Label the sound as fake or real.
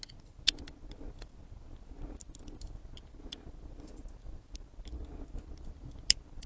real